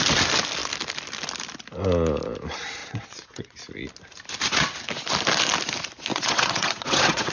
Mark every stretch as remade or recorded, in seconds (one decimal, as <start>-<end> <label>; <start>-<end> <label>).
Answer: 0.0-2.8 recorded; 2.8-3.6 remade; 3.6-6.1 recorded; 6.1-7.3 remade